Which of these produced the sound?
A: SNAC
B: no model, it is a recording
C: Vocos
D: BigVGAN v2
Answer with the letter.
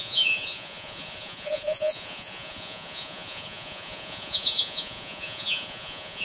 C